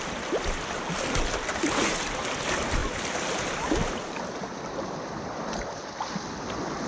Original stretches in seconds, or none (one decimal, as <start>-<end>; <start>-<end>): 0.0-2.8; 4.0-6.9